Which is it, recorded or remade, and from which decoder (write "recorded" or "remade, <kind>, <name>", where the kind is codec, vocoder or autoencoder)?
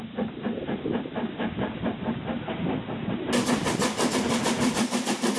recorded